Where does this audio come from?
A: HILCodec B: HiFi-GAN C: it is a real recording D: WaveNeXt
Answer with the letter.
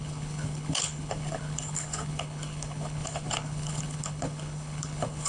A